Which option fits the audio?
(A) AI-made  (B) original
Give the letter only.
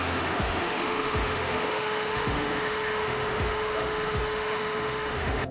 A